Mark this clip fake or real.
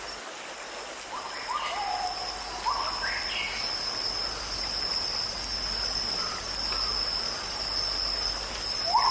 real